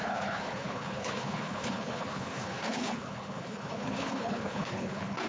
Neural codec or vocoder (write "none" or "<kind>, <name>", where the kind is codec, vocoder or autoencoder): codec, HILCodec